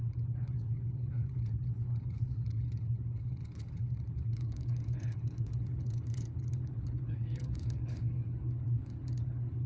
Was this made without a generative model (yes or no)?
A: no